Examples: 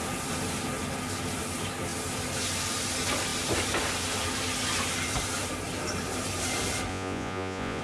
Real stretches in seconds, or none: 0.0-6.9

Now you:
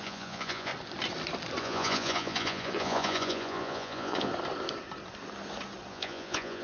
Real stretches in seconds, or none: 0.7-1.6; 4.3-5.9

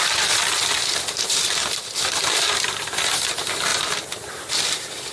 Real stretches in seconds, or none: 0.0-5.1

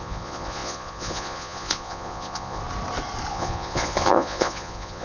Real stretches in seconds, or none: 2.6-3.3

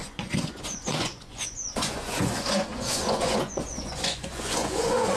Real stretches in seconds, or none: none